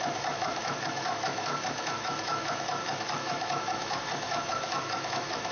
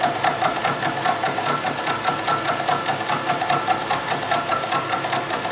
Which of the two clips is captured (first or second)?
second